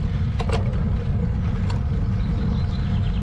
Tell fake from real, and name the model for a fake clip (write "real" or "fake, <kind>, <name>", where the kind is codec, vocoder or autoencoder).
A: real